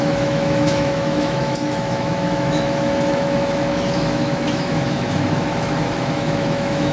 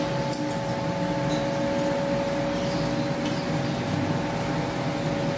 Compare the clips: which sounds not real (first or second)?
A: first